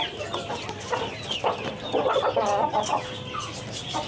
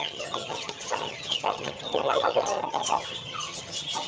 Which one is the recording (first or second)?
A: first